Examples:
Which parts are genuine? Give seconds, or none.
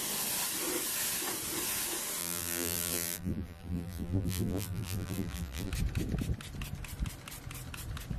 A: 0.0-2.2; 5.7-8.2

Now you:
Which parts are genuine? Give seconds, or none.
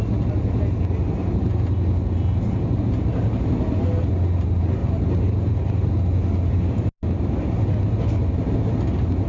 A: 0.0-9.3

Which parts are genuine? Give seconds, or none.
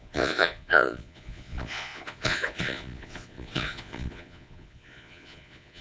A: none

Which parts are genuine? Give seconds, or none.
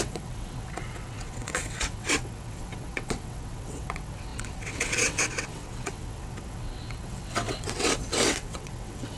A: none